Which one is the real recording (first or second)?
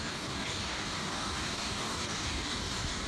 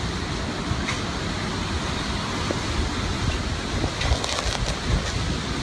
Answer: second